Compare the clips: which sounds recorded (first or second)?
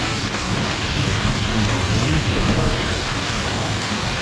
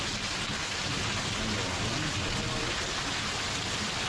second